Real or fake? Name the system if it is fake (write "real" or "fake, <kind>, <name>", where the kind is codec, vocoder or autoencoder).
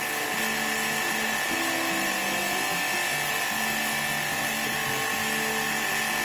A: real